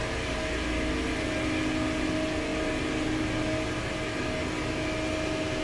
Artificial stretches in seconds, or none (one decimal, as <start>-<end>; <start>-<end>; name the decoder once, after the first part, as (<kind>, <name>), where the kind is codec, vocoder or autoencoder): none